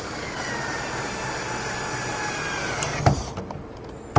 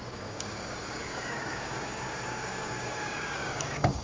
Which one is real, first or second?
first